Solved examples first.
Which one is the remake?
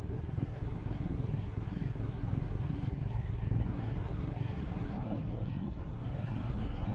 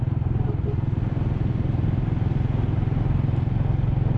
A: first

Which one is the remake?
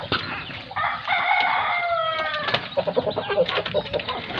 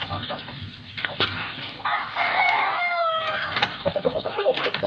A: second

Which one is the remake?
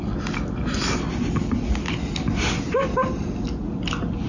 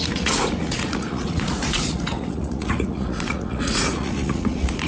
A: second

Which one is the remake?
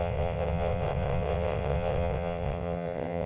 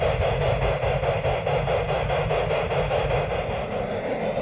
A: first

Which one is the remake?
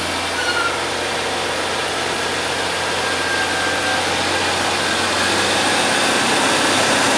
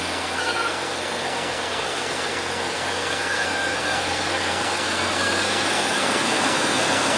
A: second